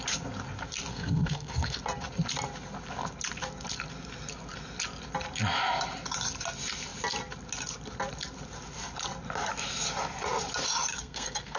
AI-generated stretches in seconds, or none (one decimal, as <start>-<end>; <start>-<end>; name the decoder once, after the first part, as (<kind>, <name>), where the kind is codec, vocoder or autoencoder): 0.9-1.8 (codec, SNAC); 10.9-11.6